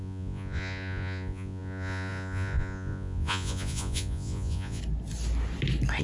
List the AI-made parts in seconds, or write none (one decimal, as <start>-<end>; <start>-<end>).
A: 0.0-4.8